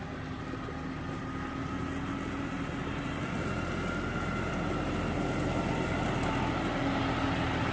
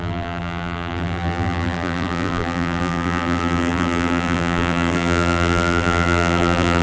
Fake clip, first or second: second